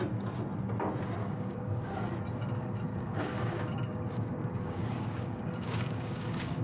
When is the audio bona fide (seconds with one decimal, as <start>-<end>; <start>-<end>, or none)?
0.0-1.2; 1.9-2.9